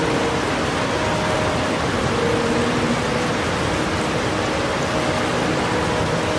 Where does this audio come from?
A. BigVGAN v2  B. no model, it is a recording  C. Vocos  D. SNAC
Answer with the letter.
B